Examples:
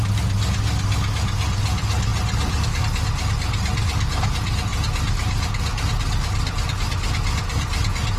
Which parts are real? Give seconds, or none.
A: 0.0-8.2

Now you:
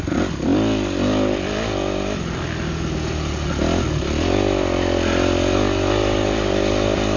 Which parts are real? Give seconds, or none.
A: 0.0-7.2

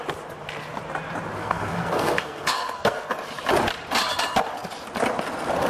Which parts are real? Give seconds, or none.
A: 0.0-1.4; 3.1-5.7

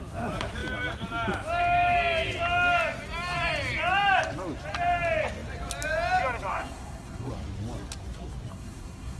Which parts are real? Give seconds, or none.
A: 0.0-6.5; 7.3-8.5

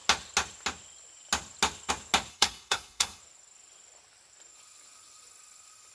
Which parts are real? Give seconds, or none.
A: 0.0-2.3; 3.2-5.9

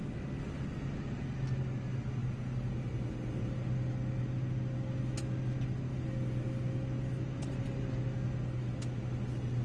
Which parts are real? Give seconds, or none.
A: 0.0-9.6

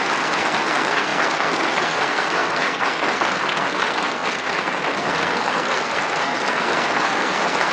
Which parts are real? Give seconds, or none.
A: none